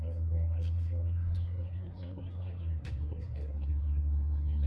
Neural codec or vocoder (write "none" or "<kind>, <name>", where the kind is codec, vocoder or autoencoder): codec, SNAC